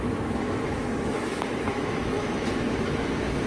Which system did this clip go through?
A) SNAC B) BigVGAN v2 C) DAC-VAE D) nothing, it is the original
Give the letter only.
C